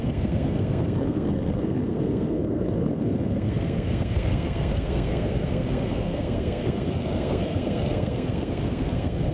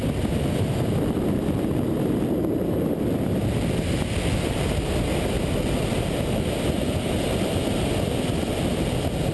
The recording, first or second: second